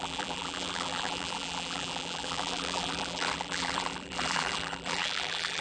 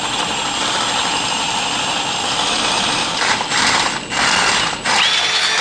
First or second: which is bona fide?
second